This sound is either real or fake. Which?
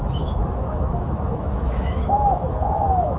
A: fake